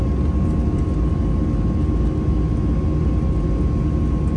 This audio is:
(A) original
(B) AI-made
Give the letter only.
A